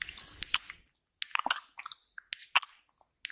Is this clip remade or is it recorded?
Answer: recorded